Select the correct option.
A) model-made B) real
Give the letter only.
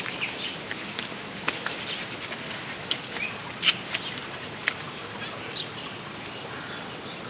B